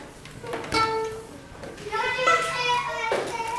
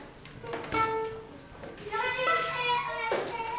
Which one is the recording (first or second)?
second